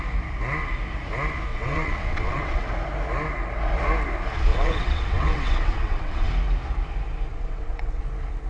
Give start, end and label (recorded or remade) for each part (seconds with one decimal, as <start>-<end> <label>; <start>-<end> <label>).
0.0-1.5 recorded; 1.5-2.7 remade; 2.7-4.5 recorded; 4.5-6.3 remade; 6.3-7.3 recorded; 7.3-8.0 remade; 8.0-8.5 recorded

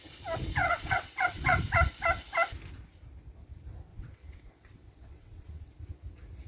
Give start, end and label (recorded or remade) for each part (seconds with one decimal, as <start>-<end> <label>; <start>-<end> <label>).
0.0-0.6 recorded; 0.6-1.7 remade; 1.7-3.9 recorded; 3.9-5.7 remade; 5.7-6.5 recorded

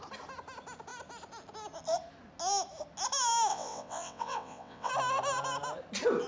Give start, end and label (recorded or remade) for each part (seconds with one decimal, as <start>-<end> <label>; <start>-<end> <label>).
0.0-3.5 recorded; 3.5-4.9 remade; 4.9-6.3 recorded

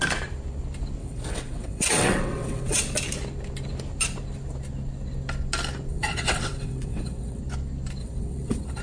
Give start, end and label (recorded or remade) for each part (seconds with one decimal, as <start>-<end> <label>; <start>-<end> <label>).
0.0-1.0 recorded; 1.0-2.8 remade; 2.8-5.9 recorded; 5.9-7.4 remade; 7.4-8.0 recorded; 8.0-8.8 remade

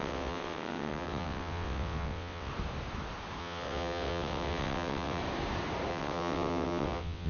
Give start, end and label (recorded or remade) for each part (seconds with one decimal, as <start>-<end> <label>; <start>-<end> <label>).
0.0-2.5 remade; 2.5-3.4 recorded; 3.4-5.2 remade; 5.2-5.9 recorded; 5.9-7.3 remade